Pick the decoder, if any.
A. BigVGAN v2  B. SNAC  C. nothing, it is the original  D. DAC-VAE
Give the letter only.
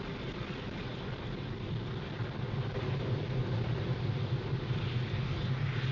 C